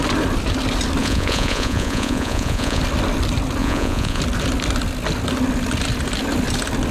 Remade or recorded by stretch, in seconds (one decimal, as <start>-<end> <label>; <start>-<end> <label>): 0.0-1.0 recorded; 1.0-2.8 remade; 2.8-3.6 recorded; 3.6-4.2 remade; 4.2-6.9 recorded